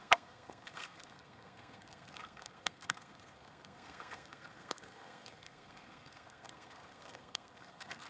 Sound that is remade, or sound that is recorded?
remade